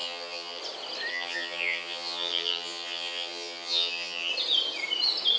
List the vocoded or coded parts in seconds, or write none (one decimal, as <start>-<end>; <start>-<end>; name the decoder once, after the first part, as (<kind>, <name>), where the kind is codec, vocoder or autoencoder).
0.0-0.6 (vocoder, HiFi-GAN); 1.1-4.3